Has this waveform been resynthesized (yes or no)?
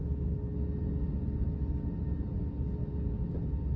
no